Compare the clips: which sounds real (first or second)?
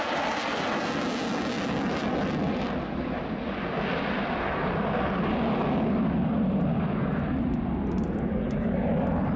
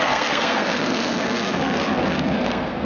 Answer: first